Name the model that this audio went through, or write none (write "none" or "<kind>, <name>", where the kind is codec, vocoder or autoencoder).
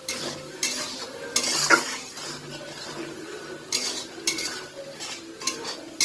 none